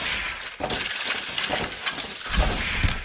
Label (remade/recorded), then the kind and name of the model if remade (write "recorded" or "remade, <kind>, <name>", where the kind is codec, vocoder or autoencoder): recorded